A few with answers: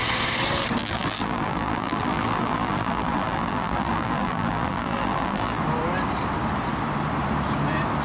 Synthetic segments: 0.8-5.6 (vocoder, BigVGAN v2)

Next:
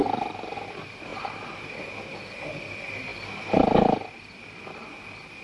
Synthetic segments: none